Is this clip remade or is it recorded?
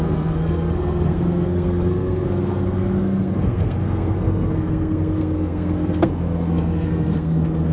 remade